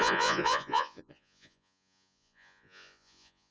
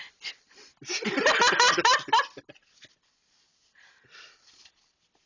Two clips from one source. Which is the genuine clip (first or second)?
second